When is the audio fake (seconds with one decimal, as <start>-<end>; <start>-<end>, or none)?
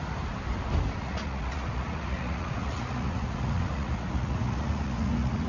1.0-5.5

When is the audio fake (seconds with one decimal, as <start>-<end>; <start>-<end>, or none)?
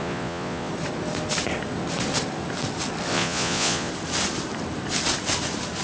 0.0-0.7; 3.1-3.9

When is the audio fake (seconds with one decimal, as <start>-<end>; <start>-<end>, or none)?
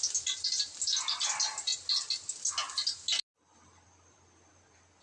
none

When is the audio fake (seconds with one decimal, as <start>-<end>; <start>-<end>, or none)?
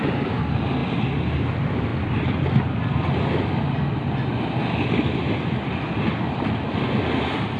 none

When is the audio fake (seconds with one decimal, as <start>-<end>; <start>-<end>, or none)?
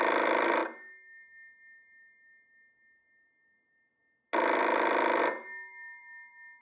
none